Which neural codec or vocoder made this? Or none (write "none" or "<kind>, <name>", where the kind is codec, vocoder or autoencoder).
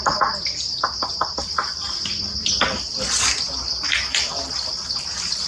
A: none